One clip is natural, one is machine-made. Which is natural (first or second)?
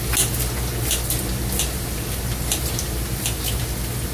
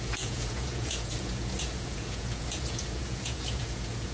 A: first